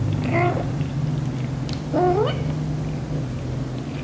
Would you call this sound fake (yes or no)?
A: no